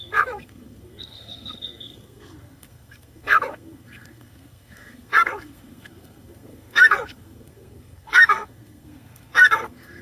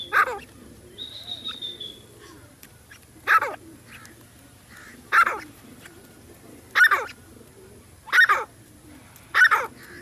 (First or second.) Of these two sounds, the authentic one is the second